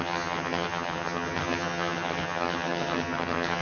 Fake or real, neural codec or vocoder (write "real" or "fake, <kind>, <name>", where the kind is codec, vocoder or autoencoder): fake, vocoder, HiFi-GAN